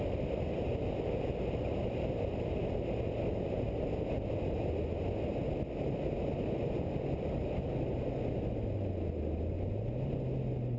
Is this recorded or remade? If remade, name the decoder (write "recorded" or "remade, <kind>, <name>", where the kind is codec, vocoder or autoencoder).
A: recorded